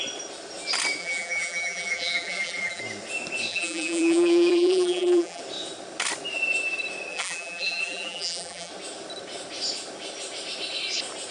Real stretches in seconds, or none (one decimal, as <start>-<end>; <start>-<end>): 0.0-1.0; 2.8-3.5; 5.4-7.1; 8.7-11.3